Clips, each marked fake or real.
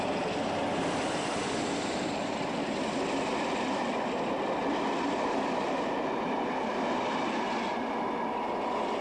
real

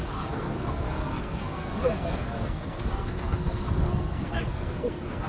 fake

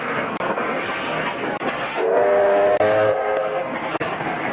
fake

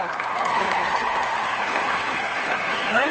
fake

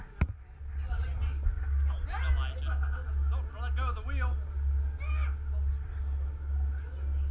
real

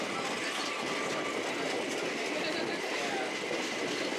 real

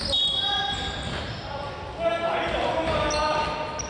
real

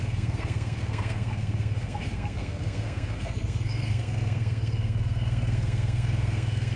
fake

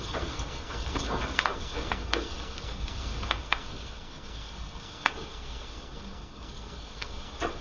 fake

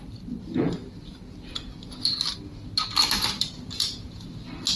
real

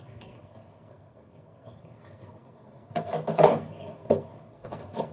fake